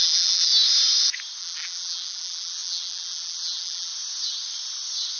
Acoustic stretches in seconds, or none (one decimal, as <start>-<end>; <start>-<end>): 0.5-1.4; 3.9-5.2